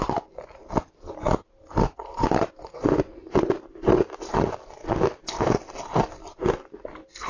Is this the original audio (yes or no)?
yes